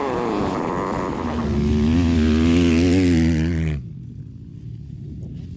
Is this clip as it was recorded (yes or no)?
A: yes